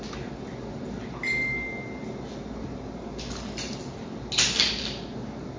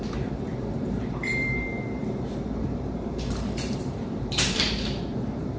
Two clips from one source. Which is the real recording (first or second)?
first